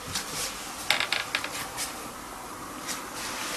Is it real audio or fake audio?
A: real